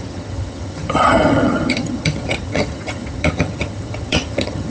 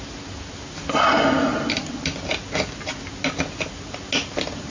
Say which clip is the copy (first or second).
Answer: first